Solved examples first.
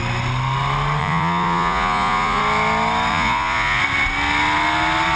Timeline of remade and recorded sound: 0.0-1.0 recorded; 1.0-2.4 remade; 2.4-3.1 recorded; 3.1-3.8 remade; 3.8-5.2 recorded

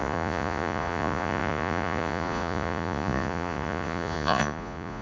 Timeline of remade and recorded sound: 0.0-5.0 remade

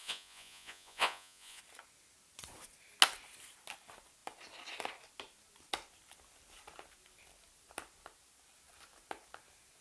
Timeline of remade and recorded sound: 0.0-1.6 remade; 1.6-9.8 recorded

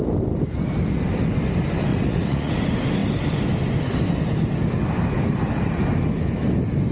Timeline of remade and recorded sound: 0.0-1.9 recorded; 1.9-2.5 remade; 2.5-6.9 recorded

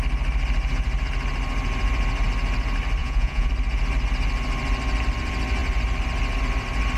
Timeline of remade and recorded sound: 0.0-3.0 recorded; 3.0-3.5 remade; 3.5-7.0 recorded

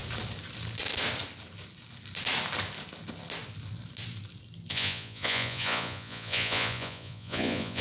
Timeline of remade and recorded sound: 0.0-4.7 recorded; 4.7-7.8 remade

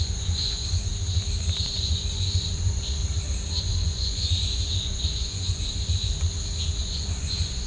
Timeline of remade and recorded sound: 0.0-0.9 remade; 0.9-1.6 recorded; 1.6-3.0 remade; 3.0-3.6 recorded; 3.6-6.1 remade; 6.1-6.8 recorded; 6.8-7.7 remade